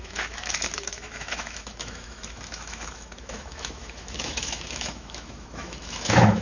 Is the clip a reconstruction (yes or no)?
yes